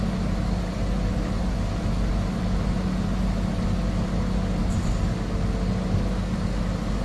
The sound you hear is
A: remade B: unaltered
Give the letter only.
B